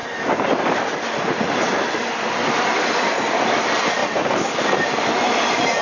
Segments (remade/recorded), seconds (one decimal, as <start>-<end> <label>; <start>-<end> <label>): 0.0-4.0 remade; 4.0-4.6 recorded; 4.6-5.8 remade